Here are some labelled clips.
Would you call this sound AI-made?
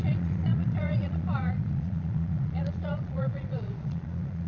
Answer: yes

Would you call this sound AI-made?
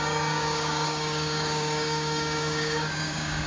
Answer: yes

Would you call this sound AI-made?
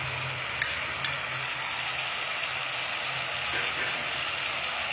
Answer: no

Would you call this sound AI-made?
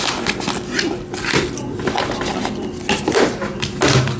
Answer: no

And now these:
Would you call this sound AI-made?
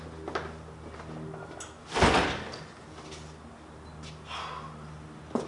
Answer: no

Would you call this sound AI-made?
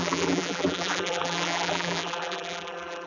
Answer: yes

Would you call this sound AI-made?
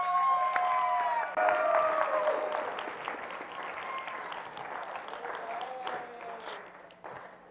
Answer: no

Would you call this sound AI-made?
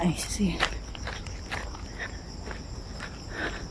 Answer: no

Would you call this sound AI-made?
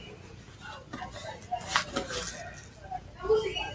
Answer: no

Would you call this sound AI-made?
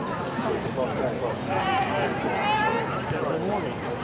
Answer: no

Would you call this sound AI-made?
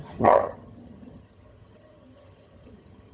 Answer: yes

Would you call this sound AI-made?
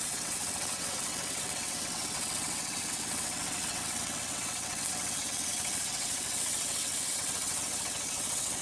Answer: yes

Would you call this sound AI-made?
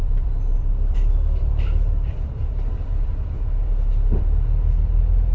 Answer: yes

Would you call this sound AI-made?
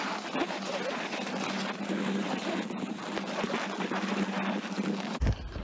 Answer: no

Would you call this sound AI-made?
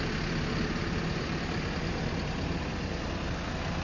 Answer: no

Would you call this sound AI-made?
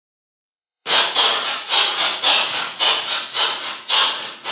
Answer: yes